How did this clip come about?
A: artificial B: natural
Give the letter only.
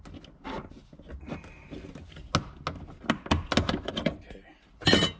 B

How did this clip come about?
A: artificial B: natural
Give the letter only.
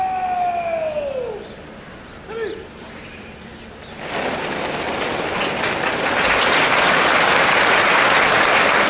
B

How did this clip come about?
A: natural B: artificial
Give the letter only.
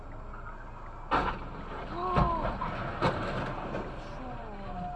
A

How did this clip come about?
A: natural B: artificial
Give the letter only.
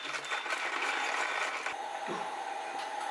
A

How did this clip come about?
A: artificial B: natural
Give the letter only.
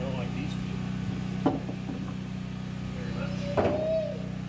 B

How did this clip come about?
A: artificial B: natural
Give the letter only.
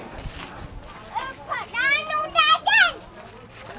B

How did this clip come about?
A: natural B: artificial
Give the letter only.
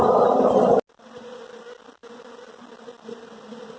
A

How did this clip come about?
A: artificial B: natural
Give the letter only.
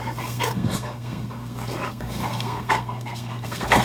A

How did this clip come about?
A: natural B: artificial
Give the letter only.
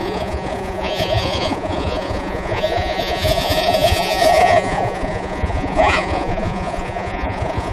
B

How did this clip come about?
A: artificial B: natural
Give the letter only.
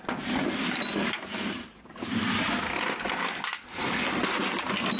B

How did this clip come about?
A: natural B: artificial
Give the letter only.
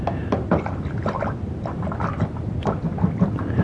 A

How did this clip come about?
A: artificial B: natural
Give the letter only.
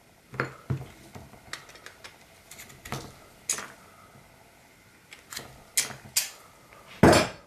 B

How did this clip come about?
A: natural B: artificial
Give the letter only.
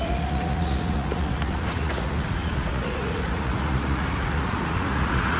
B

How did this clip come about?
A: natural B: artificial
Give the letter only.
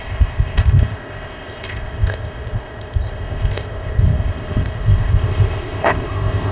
B